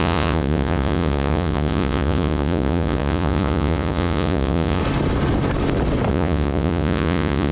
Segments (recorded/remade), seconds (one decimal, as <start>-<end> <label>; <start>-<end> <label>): 0.0-4.8 remade; 4.8-6.1 recorded; 6.1-7.5 remade